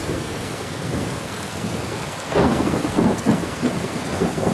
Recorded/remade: remade